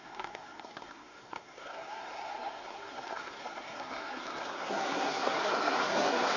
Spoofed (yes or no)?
yes